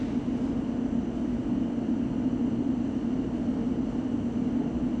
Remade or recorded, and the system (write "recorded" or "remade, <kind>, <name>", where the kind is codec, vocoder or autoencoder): recorded